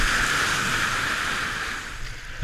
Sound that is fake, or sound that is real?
real